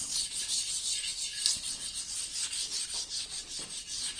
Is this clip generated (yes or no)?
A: no